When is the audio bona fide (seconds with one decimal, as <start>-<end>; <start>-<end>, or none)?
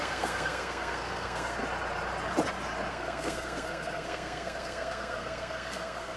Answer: 1.6-2.9